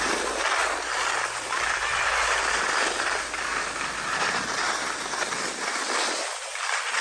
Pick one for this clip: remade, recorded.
recorded